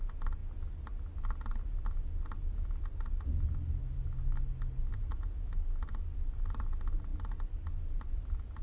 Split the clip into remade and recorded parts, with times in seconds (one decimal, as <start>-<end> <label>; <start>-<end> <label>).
0.0-8.6 recorded